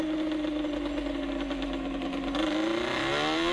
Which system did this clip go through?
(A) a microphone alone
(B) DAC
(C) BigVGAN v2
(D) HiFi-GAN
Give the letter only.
A